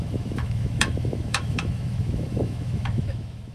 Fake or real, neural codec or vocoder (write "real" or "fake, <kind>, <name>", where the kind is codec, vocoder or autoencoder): fake, autoencoder, DAC-VAE